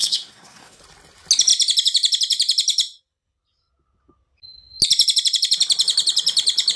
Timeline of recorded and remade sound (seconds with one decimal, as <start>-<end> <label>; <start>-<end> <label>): 0.0-0.8 remade; 0.8-6.8 recorded